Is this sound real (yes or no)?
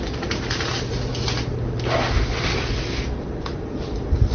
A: yes